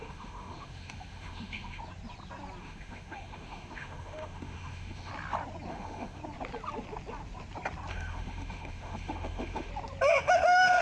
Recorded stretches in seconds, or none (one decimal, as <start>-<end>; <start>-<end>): 1.8-2.6; 5.1-5.7; 6.2-7.9; 9.7-10.2